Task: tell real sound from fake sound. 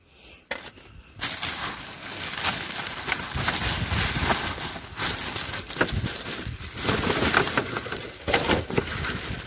real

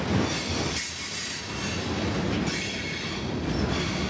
real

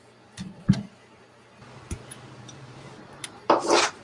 real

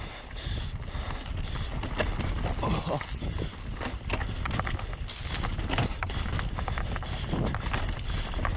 real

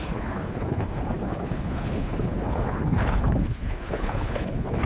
fake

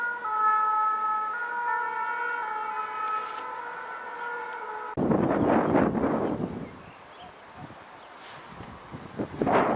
real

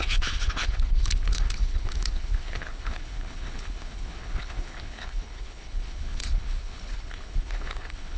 fake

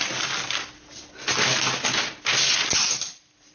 real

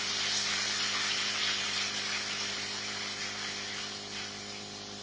real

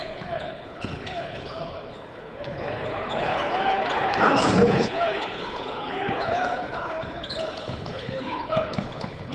fake